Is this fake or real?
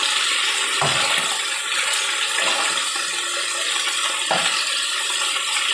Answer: real